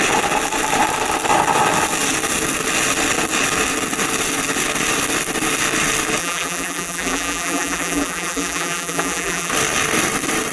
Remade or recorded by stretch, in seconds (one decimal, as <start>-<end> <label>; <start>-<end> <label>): 0.0-6.2 recorded; 6.2-9.5 remade; 9.5-10.5 recorded